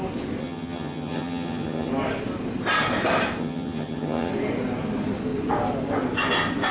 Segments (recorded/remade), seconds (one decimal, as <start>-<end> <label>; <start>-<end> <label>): 0.0-0.4 recorded; 0.4-1.9 remade; 1.9-3.4 recorded; 3.4-4.3 remade; 4.3-6.7 recorded